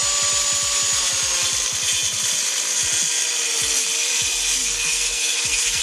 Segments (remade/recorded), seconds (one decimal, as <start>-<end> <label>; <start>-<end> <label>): 0.0-4.6 recorded; 4.6-5.8 remade